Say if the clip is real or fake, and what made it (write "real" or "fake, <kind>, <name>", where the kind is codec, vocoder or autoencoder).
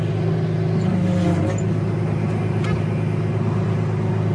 real